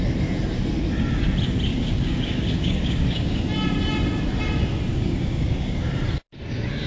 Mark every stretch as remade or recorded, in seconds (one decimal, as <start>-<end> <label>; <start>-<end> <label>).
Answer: 0.0-1.7 recorded; 1.7-3.4 remade; 3.4-4.9 recorded; 4.9-5.9 remade; 5.9-6.9 recorded